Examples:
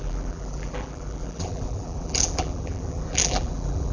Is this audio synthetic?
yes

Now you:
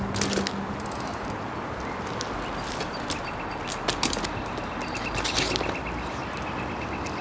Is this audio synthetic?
no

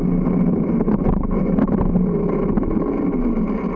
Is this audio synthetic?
no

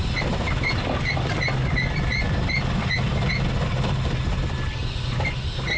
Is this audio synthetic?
no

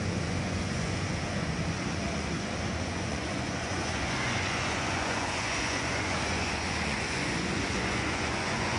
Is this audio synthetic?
yes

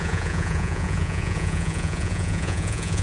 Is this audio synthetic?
yes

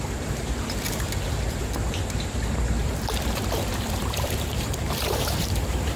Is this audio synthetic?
yes